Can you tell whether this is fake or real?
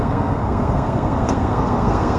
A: fake